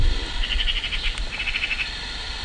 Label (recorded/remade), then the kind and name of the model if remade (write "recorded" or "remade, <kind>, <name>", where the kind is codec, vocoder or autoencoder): recorded